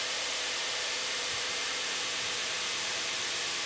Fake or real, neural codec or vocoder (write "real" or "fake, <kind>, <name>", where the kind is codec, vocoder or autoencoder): fake, vocoder, BigVGAN v2